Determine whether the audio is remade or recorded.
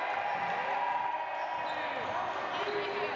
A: recorded